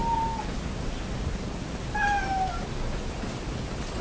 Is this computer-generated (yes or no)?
no